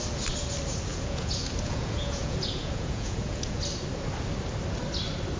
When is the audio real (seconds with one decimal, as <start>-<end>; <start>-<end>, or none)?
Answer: 0.0-0.9; 3.6-5.4